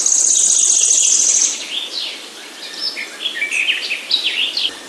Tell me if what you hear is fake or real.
real